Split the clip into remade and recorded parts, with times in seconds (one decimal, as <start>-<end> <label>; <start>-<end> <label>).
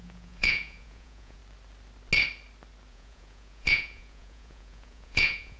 0.0-1.4 remade; 1.4-2.9 recorded; 2.9-5.6 remade